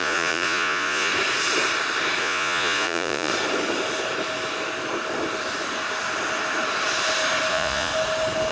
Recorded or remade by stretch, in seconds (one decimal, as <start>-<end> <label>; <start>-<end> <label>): 0.0-1.1 remade; 1.1-2.2 recorded; 2.2-3.3 remade; 3.3-7.5 recorded; 7.5-7.9 remade; 7.9-8.5 recorded